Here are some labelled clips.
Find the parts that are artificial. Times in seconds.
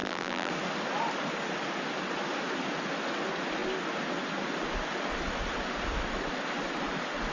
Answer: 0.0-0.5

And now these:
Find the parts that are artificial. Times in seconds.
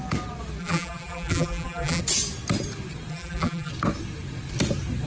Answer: 0.6-2.0; 3.1-3.7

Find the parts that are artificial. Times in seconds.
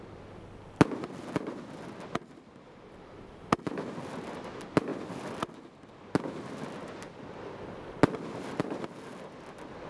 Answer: none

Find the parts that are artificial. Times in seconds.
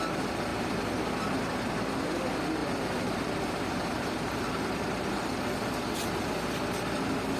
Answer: 0.5-1.7; 2.6-5.2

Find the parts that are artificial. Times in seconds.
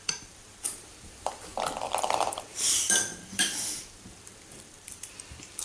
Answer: 0.0-1.5; 2.0-5.6